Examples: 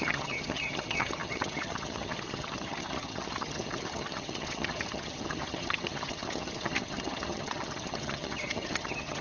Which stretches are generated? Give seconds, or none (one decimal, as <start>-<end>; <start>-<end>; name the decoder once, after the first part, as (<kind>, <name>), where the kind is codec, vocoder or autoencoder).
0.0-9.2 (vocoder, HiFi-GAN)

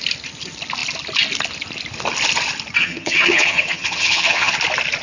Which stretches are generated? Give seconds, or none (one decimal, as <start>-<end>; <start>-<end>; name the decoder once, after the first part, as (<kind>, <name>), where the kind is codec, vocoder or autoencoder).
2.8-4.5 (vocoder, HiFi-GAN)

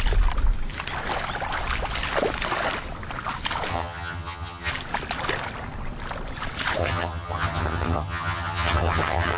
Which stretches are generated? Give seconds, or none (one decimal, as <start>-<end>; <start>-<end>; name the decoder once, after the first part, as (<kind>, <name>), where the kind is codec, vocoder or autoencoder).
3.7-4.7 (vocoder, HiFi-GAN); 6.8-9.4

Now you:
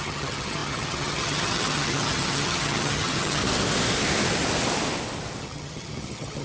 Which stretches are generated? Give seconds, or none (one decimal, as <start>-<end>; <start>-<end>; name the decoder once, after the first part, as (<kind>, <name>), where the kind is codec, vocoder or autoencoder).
0.0-3.4 (vocoder, HiFi-GAN); 5.4-6.4

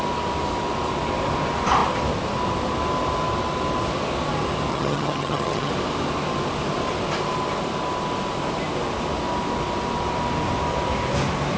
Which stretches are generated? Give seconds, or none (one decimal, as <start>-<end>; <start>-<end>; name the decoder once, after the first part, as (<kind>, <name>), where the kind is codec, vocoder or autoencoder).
4.7-5.7 (vocoder, HiFi-GAN)